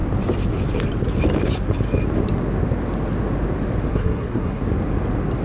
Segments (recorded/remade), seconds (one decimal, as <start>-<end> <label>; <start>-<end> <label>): 0.0-3.9 recorded; 3.9-4.6 remade; 4.6-5.4 recorded